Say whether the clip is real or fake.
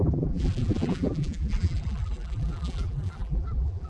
fake